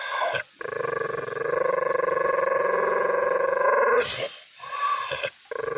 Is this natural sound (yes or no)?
yes